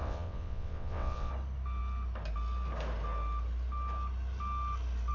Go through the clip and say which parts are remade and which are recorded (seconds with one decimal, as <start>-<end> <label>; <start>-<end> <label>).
0.0-1.3 remade; 1.3-5.1 recorded